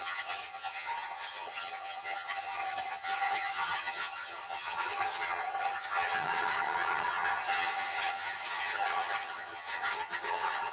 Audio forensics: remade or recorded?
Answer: remade